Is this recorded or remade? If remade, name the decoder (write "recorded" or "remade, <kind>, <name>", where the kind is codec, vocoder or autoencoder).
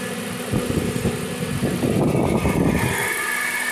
recorded